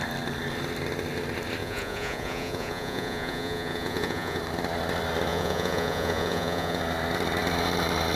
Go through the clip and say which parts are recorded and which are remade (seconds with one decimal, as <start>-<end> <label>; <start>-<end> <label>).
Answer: 0.0-1.6 recorded; 1.6-4.4 remade; 4.4-5.3 recorded; 5.3-6.8 remade; 6.8-8.2 recorded